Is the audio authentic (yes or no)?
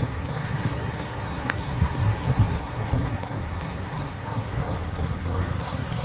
no